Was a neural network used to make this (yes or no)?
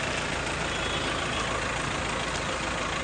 no